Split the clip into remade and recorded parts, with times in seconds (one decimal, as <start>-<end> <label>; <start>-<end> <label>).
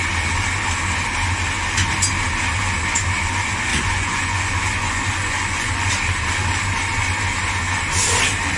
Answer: 0.0-3.7 recorded; 3.7-5.9 remade; 5.9-8.6 recorded